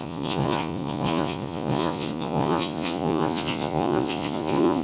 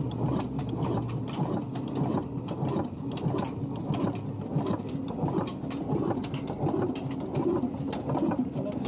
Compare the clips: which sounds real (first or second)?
second